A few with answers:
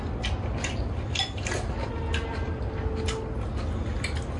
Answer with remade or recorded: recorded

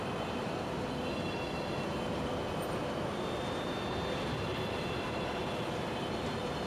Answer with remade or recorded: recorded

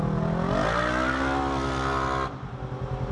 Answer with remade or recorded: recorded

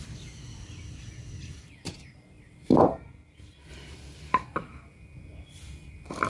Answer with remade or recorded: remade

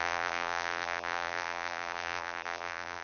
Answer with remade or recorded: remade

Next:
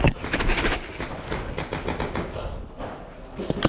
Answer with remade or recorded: recorded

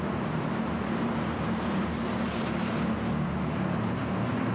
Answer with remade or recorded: remade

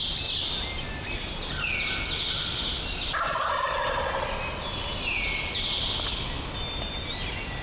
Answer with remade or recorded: recorded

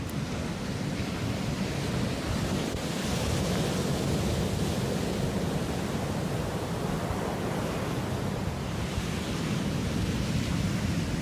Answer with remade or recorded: recorded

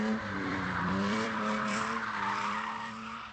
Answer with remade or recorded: remade